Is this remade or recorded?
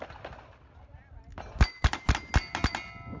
recorded